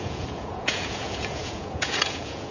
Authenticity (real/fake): fake